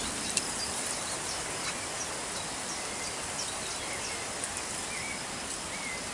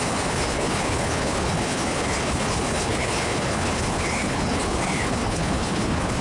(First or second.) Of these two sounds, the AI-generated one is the second